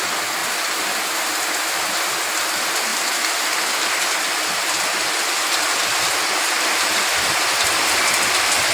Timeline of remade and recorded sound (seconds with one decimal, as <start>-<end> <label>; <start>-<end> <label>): 0.0-8.7 recorded